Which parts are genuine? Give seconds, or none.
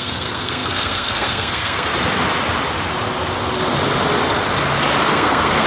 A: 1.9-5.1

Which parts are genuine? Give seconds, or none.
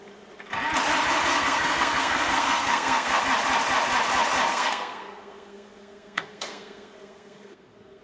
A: 0.0-1.3; 3.2-4.5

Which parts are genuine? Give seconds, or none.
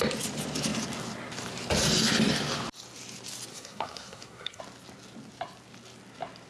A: 0.0-3.5; 4.6-6.5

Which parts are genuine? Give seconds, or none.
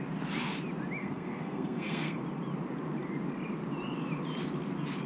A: 0.0-1.0; 2.2-5.1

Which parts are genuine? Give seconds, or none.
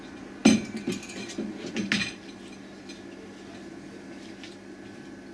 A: 0.0-5.3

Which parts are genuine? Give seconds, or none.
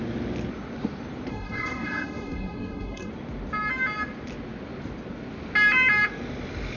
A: 0.0-1.3; 3.1-6.8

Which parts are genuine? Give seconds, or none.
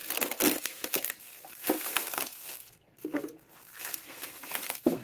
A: 0.0-0.6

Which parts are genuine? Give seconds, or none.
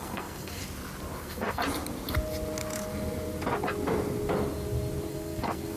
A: 0.6-1.2; 1.6-5.1